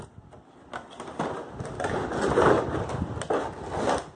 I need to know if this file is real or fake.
real